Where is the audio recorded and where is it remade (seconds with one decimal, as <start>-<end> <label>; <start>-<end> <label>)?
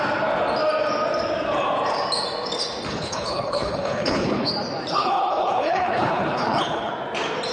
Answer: 0.0-2.9 recorded; 2.9-4.5 remade; 4.5-4.9 recorded; 4.9-6.9 remade; 6.9-7.5 recorded